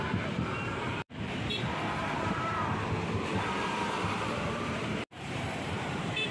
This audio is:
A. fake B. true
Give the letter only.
A